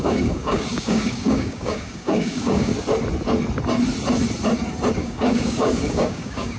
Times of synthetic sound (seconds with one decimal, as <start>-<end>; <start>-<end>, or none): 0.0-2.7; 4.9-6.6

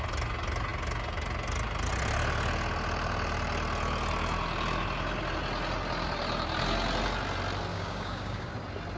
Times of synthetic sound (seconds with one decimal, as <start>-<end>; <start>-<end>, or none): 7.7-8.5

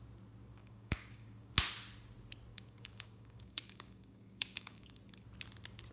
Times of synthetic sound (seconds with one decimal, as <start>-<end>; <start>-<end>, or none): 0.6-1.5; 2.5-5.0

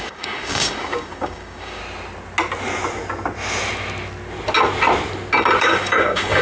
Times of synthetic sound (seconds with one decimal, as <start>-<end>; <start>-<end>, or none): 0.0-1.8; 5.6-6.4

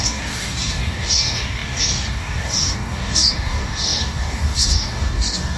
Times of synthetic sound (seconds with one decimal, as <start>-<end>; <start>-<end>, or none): 0.0-5.6

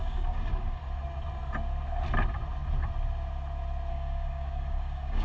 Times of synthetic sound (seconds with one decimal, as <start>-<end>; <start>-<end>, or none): 0.0-0.8; 3.9-5.2

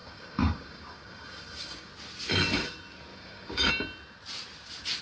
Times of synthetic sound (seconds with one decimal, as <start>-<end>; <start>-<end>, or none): 0.0-1.9; 3.1-3.7